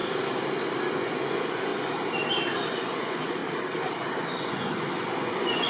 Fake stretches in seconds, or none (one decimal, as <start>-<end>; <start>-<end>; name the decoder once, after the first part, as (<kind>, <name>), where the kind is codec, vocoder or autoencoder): 0.9-1.7 (vocoder, Vocos); 2.7-3.4; 4.2-5.7